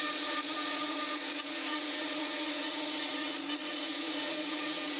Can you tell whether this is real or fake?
fake